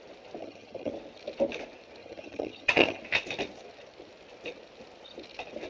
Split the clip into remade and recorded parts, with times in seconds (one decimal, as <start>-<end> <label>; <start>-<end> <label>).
0.0-0.4 recorded; 0.4-0.9 remade; 0.9-2.0 recorded; 2.0-3.0 remade; 3.0-5.7 recorded